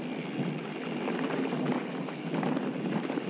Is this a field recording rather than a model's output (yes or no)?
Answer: yes